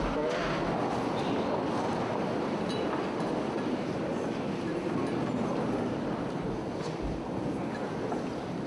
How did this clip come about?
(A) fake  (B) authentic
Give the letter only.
B